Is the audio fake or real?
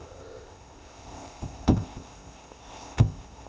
fake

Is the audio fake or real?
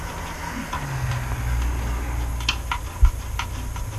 real